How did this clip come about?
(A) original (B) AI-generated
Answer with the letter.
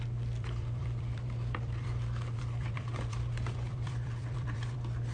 B